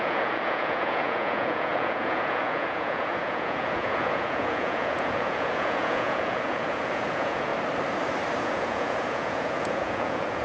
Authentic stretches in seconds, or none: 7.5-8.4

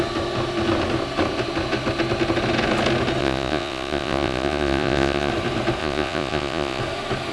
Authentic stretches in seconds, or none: 0.0-3.2; 5.3-5.8; 6.8-7.3